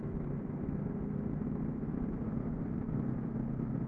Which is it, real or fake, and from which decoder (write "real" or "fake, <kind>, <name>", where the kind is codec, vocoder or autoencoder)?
real